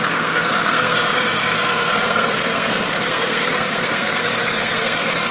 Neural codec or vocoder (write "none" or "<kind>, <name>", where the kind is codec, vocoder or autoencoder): codec, SNAC